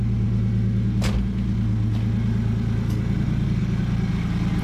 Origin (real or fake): real